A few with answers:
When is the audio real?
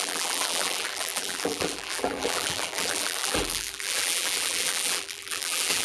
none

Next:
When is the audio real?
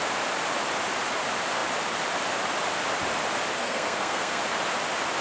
0.0-3.6; 4.4-5.2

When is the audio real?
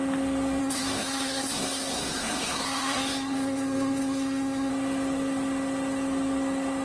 0.0-0.6; 4.7-6.8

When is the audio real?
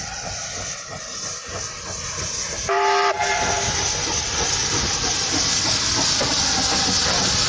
0.0-7.5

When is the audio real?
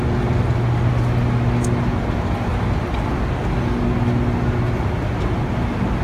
0.0-6.0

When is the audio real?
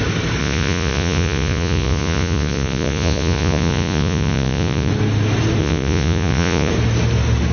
0.0-0.4; 4.9-5.6; 6.7-7.5